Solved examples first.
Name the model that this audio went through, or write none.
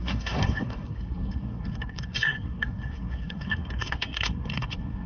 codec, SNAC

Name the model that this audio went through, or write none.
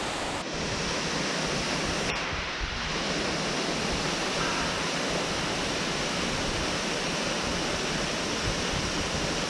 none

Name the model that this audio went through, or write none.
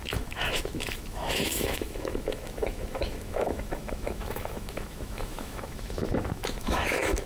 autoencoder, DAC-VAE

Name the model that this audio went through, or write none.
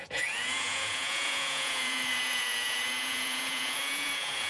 vocoder, Vocos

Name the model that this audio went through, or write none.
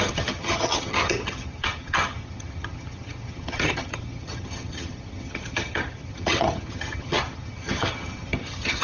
vocoder, HiFi-GAN